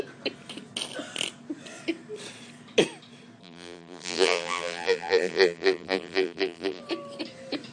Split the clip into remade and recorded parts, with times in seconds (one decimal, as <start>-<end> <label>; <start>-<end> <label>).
0.0-3.4 recorded; 3.4-6.8 remade; 6.8-7.7 recorded